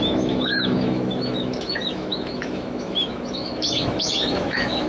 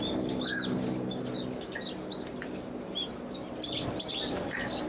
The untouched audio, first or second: second